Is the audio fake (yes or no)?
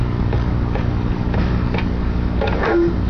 yes